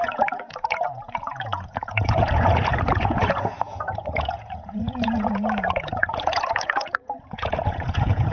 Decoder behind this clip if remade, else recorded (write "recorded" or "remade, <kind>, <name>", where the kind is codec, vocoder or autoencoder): remade, vocoder, Vocos